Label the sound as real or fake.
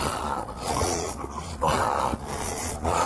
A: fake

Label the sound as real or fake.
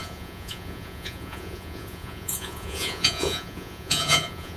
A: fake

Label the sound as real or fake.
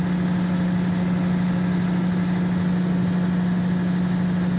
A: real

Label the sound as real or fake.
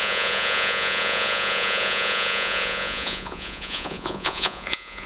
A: fake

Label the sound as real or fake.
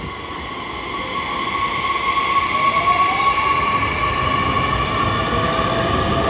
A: real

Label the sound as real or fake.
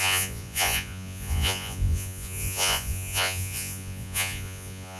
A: fake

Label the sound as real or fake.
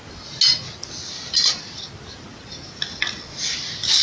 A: real